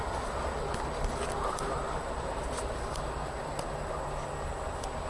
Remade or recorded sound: recorded